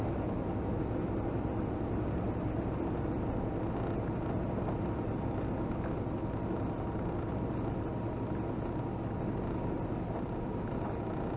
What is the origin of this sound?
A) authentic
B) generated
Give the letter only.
A